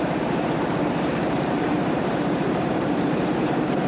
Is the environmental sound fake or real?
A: fake